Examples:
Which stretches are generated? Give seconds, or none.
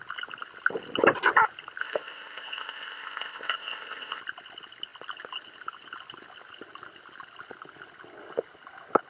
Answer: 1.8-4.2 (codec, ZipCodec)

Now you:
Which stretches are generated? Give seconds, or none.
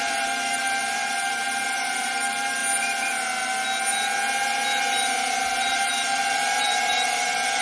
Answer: 0.0-2.6 (vocoder, BigVGAN v2); 5.6-7.6